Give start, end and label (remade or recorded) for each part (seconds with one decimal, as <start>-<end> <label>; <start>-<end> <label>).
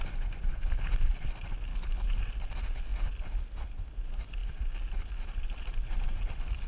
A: 0.0-0.5 recorded; 0.5-1.1 remade; 1.1-1.7 recorded; 1.7-2.2 remade; 2.2-6.7 recorded